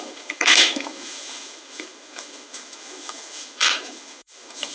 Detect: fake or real fake